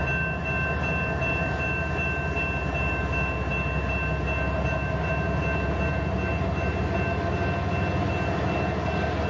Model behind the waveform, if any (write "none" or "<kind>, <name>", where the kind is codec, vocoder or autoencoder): none